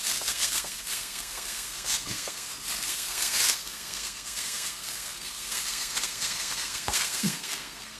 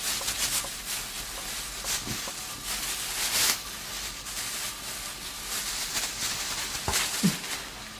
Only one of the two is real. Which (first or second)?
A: second